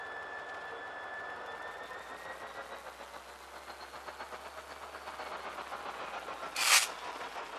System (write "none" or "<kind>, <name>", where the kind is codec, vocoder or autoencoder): none